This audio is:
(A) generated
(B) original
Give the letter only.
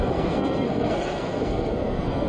A